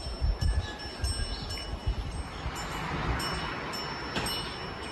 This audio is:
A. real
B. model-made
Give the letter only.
A